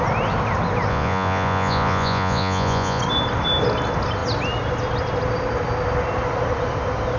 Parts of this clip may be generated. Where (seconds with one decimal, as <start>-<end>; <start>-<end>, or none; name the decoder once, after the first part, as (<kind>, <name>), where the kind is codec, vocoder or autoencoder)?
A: 0.9-3.0 (vocoder, Vocos)